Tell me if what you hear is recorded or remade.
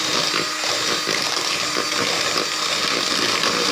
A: recorded